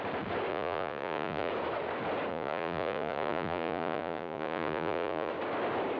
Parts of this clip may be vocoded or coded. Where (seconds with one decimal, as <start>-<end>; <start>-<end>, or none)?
0.5-1.5; 2.3-5.3